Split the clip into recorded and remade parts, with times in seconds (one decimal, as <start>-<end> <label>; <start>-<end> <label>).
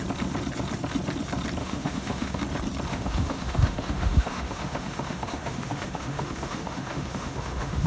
0.0-1.6 recorded; 1.6-2.4 remade; 2.4-2.9 recorded; 2.9-7.9 remade